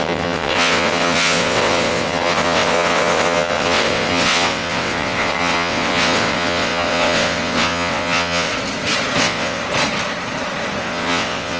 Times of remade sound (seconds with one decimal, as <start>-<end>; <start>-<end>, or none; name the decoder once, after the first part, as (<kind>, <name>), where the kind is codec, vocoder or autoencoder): 0.0-8.5 (vocoder, WaveNeXt); 9.2-9.6; 10.8-11.6